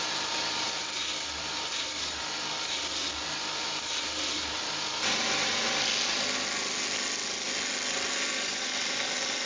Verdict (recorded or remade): recorded